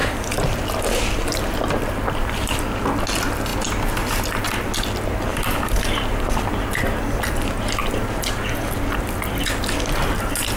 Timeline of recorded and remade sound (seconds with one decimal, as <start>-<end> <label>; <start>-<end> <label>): 0.0-2.5 remade; 2.5-5.3 recorded; 5.3-6.5 remade; 6.5-7.8 recorded; 7.8-9.5 remade; 9.5-10.6 recorded